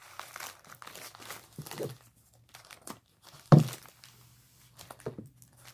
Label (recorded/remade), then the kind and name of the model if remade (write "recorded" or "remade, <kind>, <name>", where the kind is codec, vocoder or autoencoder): recorded